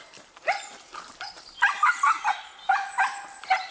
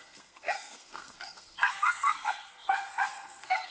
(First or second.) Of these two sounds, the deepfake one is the second